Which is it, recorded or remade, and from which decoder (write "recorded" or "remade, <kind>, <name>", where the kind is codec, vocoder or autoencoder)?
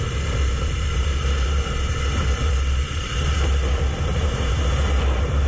remade, vocoder, BigVGAN v2